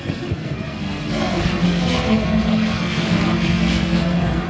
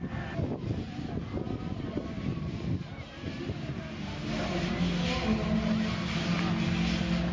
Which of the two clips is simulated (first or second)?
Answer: first